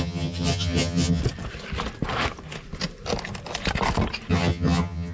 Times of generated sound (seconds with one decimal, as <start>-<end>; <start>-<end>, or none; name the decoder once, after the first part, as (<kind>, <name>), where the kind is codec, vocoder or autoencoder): 0.0-1.2 (vocoder, HiFi-GAN); 4.3-5.1